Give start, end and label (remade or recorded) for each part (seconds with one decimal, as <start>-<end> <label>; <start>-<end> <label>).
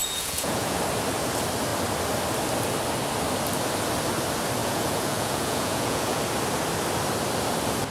0.0-0.8 remade; 0.8-4.6 recorded; 4.6-6.2 remade; 6.2-7.9 recorded